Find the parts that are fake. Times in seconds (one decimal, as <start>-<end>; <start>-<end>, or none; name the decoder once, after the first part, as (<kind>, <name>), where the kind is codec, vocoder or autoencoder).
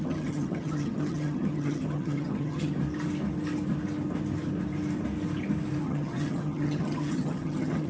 0.0-2.7 (vocoder, HiFi-GAN); 5.8-7.9